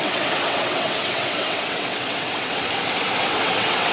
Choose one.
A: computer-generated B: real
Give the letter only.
A